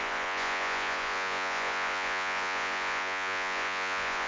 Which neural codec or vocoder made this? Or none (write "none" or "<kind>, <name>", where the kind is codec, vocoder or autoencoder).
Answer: vocoder, Vocos